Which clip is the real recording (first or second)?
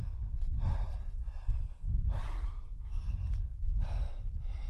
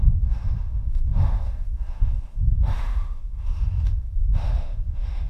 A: first